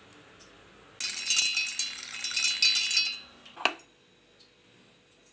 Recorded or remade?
recorded